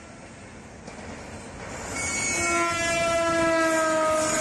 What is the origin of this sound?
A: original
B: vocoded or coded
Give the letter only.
A